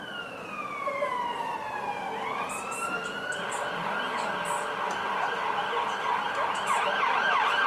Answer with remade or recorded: recorded